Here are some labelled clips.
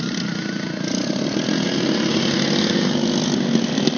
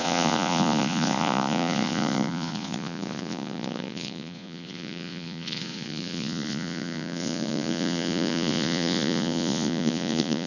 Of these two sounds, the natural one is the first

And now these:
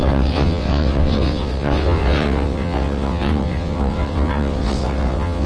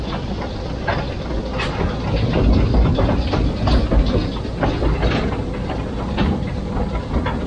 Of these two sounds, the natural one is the second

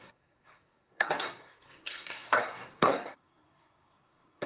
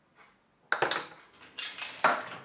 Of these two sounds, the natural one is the second